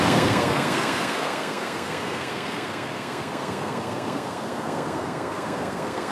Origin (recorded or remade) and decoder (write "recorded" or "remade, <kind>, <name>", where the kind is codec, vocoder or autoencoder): remade, codec, SNAC